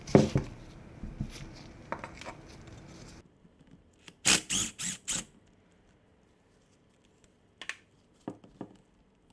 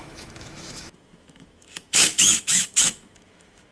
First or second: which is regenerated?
second